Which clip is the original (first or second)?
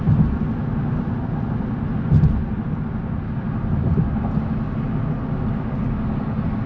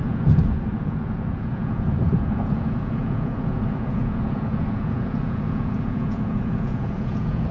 first